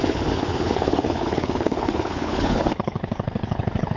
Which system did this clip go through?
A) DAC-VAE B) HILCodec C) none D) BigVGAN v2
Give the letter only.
B